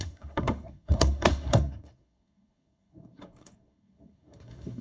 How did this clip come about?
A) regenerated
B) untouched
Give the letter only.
A